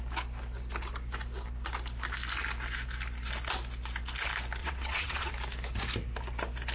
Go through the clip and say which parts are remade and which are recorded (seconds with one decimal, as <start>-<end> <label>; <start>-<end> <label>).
0.0-4.6 recorded; 4.6-5.3 remade; 5.3-6.7 recorded